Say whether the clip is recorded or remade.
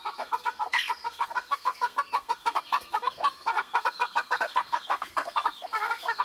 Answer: remade